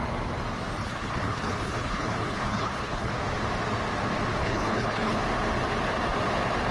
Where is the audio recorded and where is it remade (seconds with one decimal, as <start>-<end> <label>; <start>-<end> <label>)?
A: 0.0-0.8 recorded; 0.8-3.1 remade; 3.1-4.4 recorded; 4.4-5.2 remade; 5.2-6.7 recorded